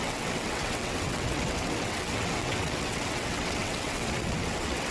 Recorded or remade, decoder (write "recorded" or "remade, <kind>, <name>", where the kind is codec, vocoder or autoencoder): remade, vocoder, WaveNeXt